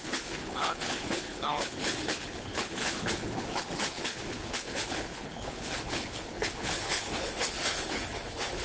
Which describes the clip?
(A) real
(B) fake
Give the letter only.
B